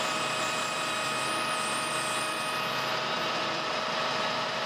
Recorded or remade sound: recorded